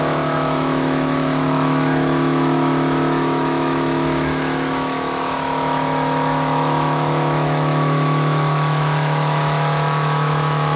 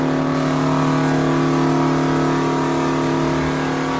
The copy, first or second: first